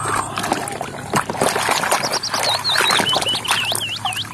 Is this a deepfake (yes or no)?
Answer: no